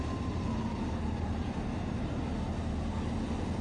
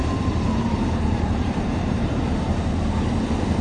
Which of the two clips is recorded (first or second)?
first